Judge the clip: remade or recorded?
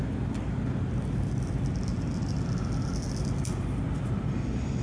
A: recorded